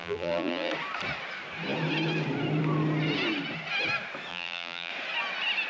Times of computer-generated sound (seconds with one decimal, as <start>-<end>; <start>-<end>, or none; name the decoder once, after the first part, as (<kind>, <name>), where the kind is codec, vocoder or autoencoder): 0.0-0.7 (vocoder, BigVGAN v2); 4.3-4.9